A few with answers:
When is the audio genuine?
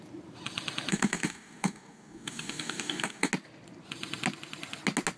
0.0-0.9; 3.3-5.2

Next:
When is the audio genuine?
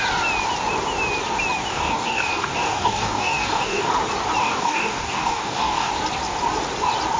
0.0-1.7; 3.9-4.4; 5.9-7.2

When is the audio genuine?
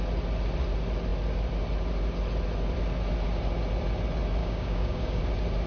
0.0-4.4; 5.2-5.7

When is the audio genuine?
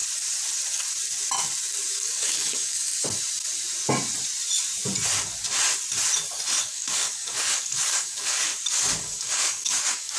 0.0-1.9; 2.9-6.6; 8.5-9.0